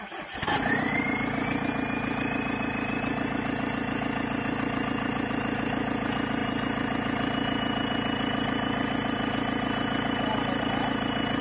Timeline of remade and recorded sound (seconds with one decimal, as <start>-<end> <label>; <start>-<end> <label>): 0.0-11.4 recorded